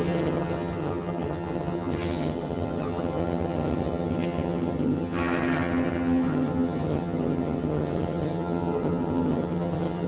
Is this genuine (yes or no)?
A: no